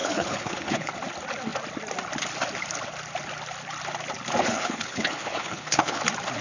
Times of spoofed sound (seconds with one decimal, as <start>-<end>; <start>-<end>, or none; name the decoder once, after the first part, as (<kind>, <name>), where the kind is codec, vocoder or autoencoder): 0.0-0.9 (codec, HILCodec); 4.4-6.0